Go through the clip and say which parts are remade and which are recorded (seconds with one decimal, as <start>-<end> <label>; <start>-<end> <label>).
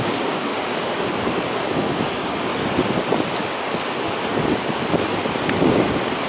0.0-0.5 remade; 0.5-1.6 recorded; 1.6-2.5 remade; 2.5-6.3 recorded